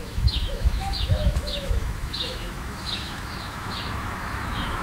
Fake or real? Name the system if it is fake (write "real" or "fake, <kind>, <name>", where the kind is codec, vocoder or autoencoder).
fake, autoencoder, DAC-VAE